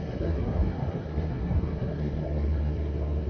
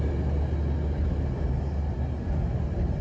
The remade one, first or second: first